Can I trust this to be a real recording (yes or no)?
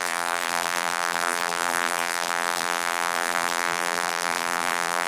no